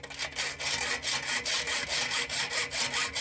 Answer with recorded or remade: recorded